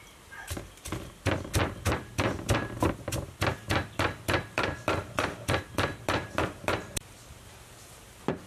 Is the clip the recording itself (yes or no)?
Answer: yes